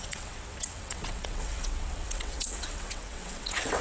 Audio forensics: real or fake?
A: fake